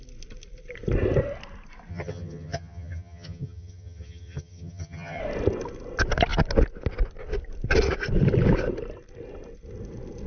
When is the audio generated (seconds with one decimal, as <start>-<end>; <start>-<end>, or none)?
1.9-5.2